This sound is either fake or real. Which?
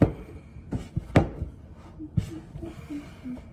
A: real